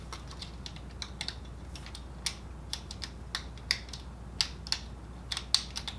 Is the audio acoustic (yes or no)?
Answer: yes